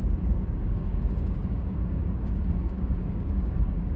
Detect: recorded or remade remade